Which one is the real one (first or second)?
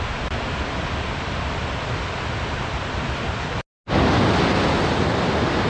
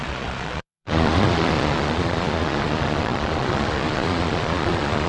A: first